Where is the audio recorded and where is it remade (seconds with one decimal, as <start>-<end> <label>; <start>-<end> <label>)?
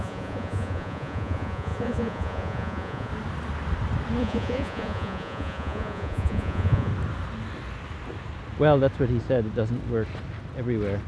0.0-3.1 remade; 3.1-4.2 recorded; 4.2-6.9 remade; 6.9-11.1 recorded